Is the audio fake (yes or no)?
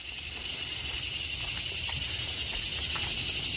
no